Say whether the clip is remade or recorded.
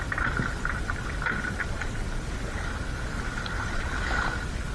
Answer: recorded